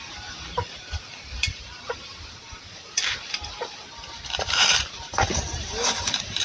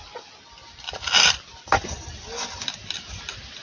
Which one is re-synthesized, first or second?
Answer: first